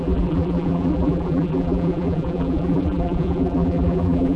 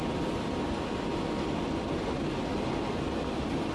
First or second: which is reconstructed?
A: first